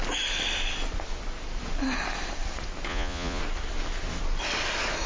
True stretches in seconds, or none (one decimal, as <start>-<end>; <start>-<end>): 0.0-2.9; 3.4-5.1

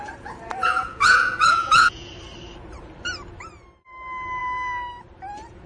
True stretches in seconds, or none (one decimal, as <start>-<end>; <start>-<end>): 0.0-0.6; 2.1-5.7